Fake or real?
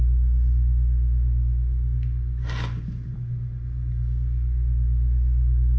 real